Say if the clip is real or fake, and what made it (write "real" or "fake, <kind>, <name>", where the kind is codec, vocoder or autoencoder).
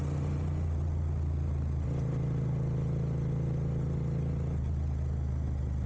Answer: real